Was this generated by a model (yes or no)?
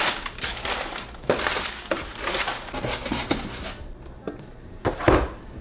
no